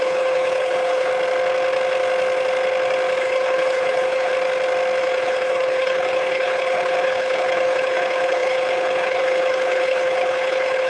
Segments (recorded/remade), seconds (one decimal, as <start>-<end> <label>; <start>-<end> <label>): 0.0-1.1 remade; 1.1-3.2 recorded; 3.2-4.3 remade; 4.3-5.0 recorded; 5.0-10.9 remade